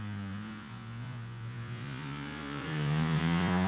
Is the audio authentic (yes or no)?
no